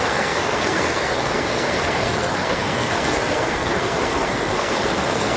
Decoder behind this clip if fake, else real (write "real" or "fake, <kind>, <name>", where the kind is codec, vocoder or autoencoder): fake, codec, SNAC